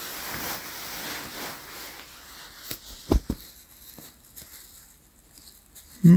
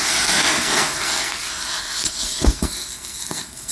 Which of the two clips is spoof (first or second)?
second